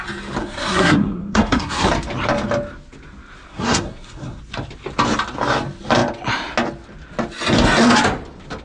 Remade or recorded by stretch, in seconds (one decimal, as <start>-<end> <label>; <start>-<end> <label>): 0.0-0.4 recorded; 0.4-1.9 remade; 1.9-3.5 recorded; 3.5-4.4 remade; 4.4-8.6 recorded